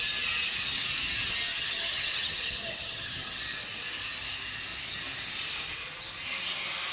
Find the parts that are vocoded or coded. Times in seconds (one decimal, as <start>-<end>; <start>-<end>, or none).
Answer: 1.5-3.4